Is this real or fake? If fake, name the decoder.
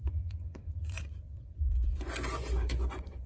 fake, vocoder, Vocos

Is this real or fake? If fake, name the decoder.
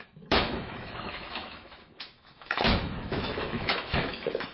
fake, autoencoder, DAC-VAE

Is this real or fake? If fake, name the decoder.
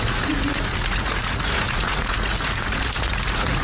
fake, vocoder, Vocos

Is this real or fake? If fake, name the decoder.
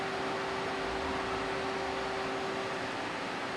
real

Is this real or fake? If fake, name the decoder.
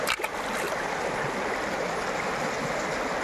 real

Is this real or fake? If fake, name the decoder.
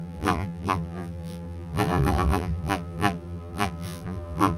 fake, vocoder, BigVGAN v2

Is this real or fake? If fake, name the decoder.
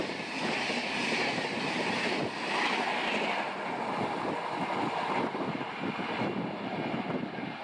real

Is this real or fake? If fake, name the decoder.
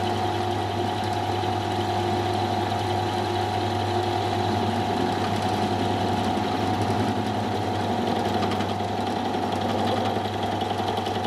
real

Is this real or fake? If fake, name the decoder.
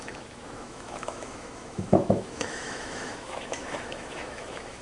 fake, autoencoder, DAC-VAE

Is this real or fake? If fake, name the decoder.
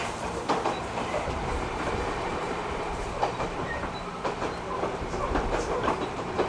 fake, vocoder, BigVGAN v2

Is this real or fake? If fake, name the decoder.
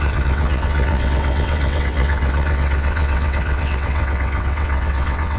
fake, vocoder, WaveNeXt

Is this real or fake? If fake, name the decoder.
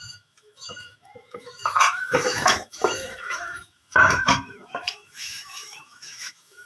fake, autoencoder, DAC-VAE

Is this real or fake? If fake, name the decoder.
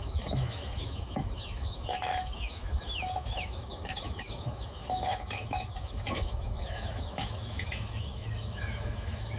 fake, autoencoder, DAC-VAE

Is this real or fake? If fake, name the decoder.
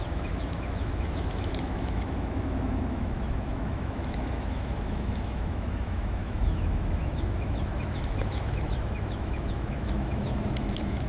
fake, autoencoder, DAC-VAE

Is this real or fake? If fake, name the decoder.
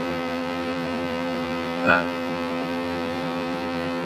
fake, vocoder, BigVGAN v2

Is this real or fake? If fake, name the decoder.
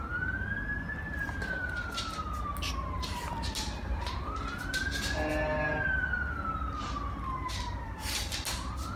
real